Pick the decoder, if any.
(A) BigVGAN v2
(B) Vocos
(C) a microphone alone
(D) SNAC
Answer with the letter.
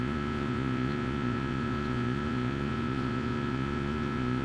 B